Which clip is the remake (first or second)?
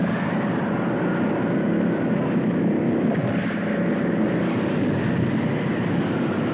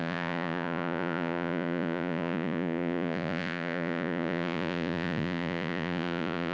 second